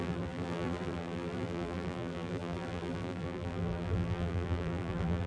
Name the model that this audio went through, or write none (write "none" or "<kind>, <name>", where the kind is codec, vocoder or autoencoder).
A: vocoder, BigVGAN v2